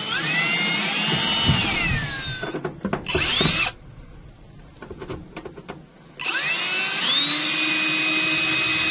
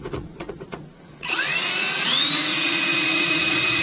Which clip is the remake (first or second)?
second